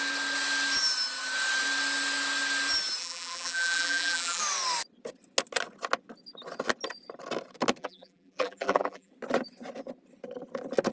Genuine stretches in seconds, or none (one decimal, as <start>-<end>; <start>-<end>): 0.0-3.0; 4.4-7.8; 9.1-10.9

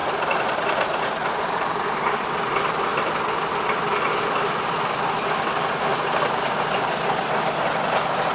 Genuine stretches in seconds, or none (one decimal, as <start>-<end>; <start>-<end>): 2.5-5.9; 7.2-8.3